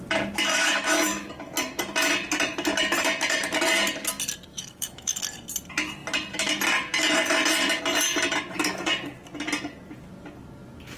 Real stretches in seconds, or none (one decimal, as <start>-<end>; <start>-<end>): 0.0-0.5; 1.3-4.5; 5.2-11.0